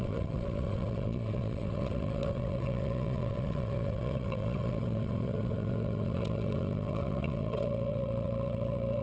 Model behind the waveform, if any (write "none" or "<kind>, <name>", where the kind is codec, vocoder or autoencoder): vocoder, WaveNeXt